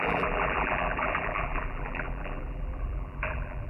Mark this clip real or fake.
fake